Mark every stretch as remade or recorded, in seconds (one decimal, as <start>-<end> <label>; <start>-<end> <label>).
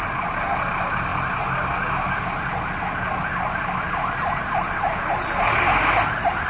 0.0-6.5 recorded